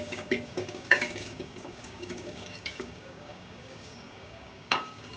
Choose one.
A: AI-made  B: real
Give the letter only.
A